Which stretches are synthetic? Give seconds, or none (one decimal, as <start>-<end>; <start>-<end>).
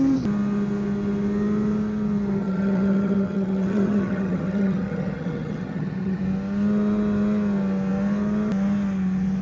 2.4-6.2